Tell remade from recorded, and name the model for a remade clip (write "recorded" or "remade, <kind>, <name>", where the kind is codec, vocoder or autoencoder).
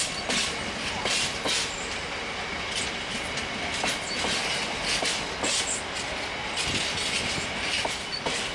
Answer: recorded